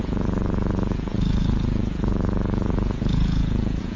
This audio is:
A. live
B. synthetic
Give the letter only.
B